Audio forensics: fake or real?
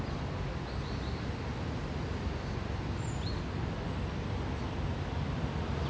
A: real